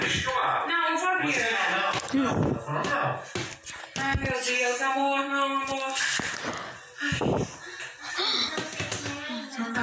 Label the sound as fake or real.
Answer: real